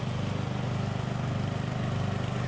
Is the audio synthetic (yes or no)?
no